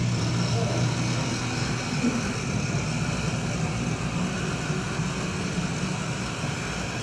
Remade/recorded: recorded